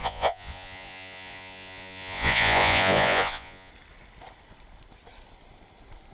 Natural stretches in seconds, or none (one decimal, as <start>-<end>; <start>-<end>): 3.7-6.1